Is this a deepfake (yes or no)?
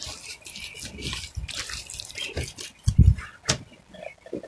no